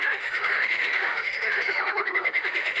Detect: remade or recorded remade